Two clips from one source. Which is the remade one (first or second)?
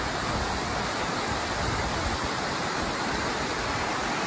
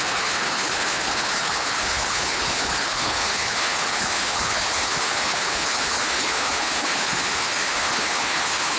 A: second